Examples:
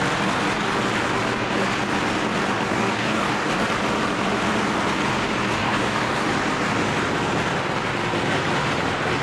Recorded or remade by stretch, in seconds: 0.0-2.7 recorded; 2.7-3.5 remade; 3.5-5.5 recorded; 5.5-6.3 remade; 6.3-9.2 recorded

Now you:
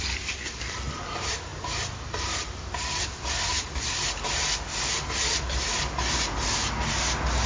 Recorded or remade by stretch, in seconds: 0.0-7.5 recorded

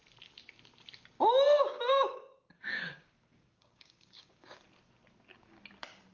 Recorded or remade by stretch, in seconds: 0.0-1.6 recorded; 1.6-4.6 remade; 4.6-6.1 recorded

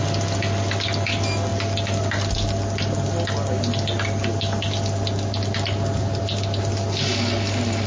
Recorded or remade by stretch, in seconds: 0.0-7.9 recorded

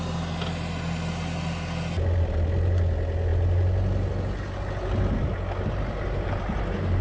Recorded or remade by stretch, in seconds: 0.0-7.0 recorded

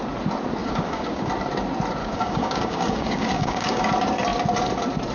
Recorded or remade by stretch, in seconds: 0.0-0.6 recorded; 0.6-1.3 remade; 1.3-2.0 recorded; 2.0-3.9 remade; 3.9-5.1 recorded